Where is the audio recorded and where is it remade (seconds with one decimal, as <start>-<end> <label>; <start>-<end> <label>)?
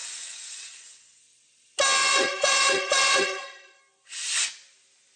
0.0-1.2 remade; 1.2-2.0 recorded; 2.0-3.8 remade; 3.8-5.2 recorded